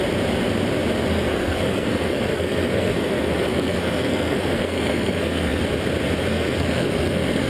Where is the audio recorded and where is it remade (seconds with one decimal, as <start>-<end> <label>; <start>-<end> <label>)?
0.0-1.1 recorded; 1.1-5.6 remade; 5.6-6.3 recorded; 6.3-7.5 remade